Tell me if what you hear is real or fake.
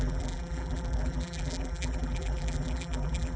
fake